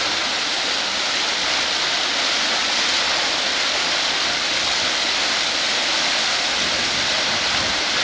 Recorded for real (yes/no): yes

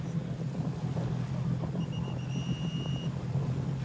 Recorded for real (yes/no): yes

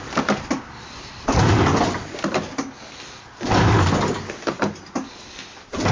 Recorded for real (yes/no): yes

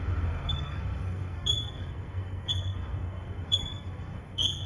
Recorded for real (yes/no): no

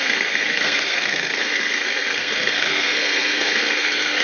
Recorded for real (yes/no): no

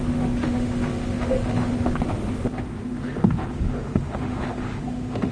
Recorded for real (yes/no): no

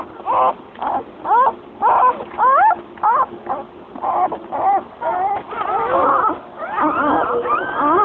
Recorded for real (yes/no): yes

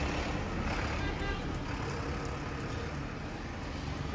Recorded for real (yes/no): yes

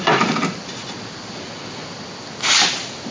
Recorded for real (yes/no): yes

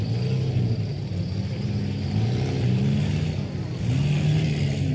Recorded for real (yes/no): yes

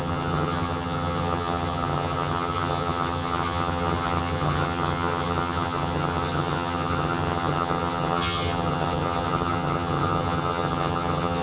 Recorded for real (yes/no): no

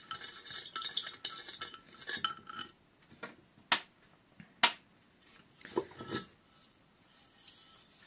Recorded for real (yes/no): yes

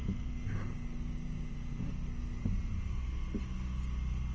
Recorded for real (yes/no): yes